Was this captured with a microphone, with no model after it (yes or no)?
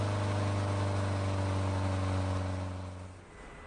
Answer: yes